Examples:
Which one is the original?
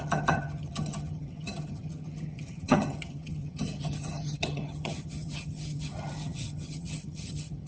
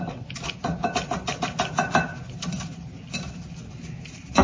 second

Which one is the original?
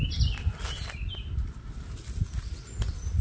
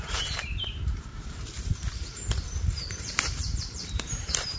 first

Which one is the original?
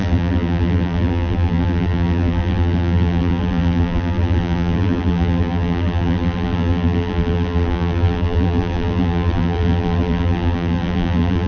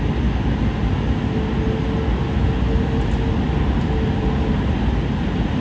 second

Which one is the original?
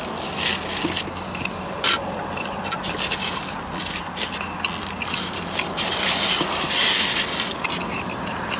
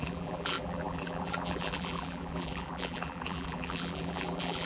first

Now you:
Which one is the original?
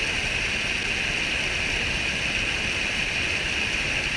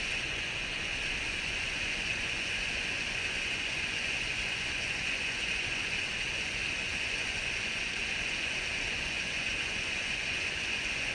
first